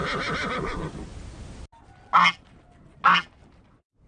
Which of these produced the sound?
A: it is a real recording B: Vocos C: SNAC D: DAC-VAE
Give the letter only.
A